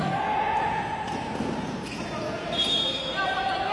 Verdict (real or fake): real